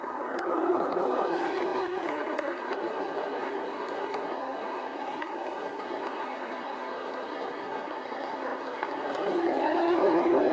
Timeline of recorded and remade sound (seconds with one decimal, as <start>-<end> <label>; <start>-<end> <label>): 0.0-10.5 remade